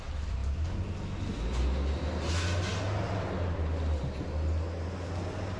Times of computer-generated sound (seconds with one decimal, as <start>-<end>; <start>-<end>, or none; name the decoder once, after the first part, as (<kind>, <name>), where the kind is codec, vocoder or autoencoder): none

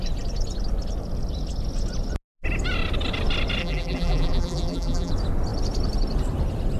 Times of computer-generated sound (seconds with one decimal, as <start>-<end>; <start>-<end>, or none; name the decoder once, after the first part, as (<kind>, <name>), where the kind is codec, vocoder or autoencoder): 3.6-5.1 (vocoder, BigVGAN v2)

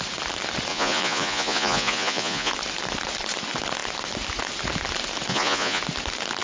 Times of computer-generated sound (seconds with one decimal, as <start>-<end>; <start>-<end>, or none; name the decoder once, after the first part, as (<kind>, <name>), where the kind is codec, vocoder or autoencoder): 0.7-2.5 (vocoder, Vocos); 5.3-5.8

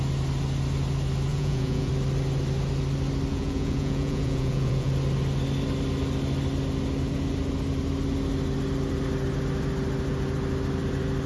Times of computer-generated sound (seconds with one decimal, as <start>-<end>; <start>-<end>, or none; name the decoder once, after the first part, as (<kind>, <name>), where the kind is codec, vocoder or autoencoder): 1.3-1.9 (vocoder, Vocos); 3.3-4.9

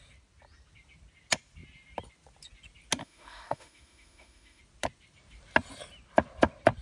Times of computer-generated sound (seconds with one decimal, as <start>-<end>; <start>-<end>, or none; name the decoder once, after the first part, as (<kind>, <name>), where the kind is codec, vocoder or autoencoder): 3.0-4.6 (autoencoder, DAC-VAE)

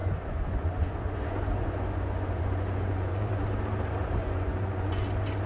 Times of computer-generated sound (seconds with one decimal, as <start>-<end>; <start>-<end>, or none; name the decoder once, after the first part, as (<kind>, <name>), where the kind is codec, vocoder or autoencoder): 0.0-3.3 (vocoder, Vocos); 4.2-5.0

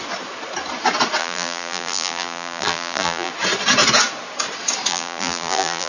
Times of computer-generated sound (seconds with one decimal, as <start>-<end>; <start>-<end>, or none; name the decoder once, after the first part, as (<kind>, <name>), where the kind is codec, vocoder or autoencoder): 1.2-3.3 (vocoder, BigVGAN v2); 4.9-5.9